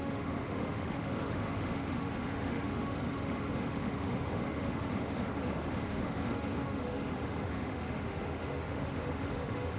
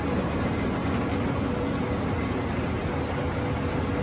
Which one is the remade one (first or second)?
first